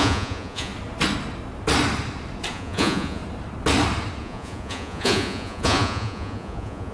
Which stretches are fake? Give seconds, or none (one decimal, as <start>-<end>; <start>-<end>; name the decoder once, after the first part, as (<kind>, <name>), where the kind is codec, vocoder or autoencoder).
0.0-0.7 (vocoder, Vocos); 2.5-3.2; 4.2-6.9